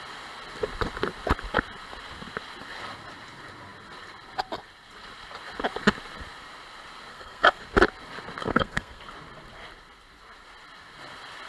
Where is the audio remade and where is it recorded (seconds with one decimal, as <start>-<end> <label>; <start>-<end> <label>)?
0.0-7.1 recorded; 7.1-7.6 remade; 7.6-8.4 recorded; 8.4-9.0 remade; 9.0-11.5 recorded